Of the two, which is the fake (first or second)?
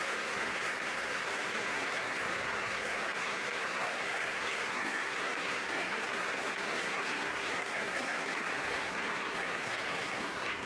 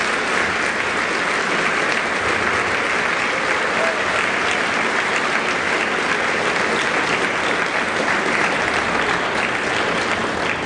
first